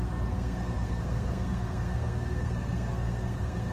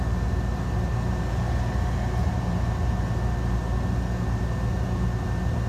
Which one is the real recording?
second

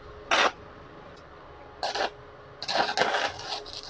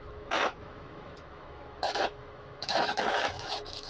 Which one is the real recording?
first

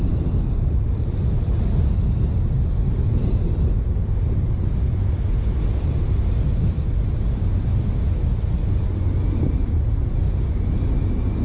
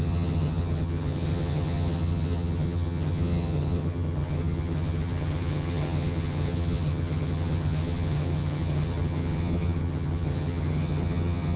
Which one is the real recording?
first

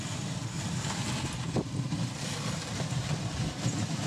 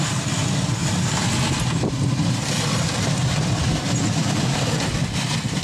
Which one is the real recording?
second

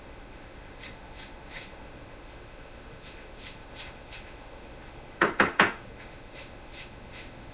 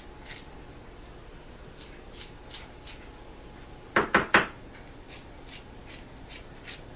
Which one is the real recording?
second